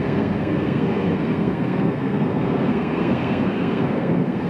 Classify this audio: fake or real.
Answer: fake